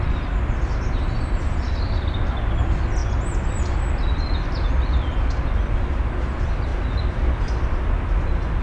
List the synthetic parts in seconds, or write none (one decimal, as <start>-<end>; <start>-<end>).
none